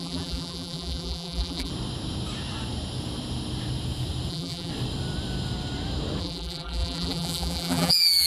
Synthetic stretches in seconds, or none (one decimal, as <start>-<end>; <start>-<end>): 0.0-1.7; 4.3-4.7; 6.2-8.3